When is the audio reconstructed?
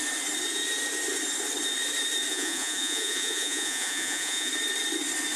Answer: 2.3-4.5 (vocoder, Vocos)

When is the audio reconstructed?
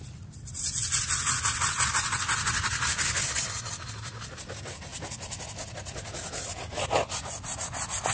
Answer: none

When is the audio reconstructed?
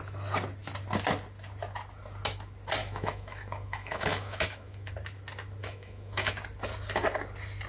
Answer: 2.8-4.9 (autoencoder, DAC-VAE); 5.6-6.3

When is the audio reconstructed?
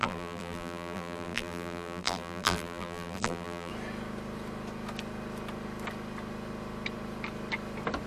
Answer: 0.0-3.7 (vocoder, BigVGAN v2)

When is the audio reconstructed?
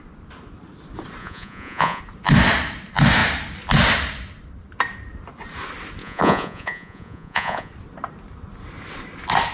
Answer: 1.2-2.0 (vocoder, Vocos); 6.0-7.7